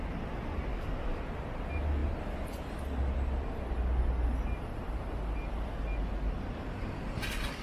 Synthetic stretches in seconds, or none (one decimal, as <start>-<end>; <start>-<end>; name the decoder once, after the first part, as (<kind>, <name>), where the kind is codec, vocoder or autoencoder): 0.7-1.2 (codec, DAC)